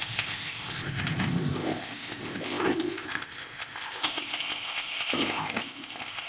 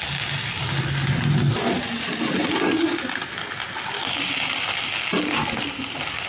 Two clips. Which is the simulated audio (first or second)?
first